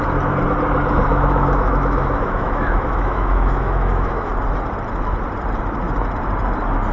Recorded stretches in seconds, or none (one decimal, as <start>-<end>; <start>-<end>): 0.0-1.1; 4.3-6.9